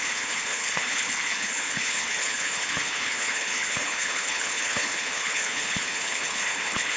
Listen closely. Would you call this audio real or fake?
fake